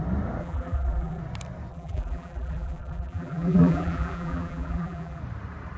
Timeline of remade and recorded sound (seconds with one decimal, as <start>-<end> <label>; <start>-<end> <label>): 0.0-0.4 recorded; 0.4-1.2 remade; 1.2-1.7 recorded; 1.7-5.2 remade; 5.2-5.8 recorded